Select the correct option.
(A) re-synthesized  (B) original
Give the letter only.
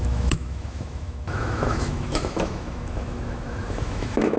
A